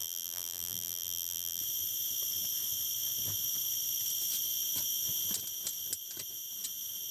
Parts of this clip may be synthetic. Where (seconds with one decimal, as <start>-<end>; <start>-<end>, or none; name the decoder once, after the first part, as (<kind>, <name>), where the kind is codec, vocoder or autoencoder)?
0.0-1.6 (vocoder, BigVGAN v2)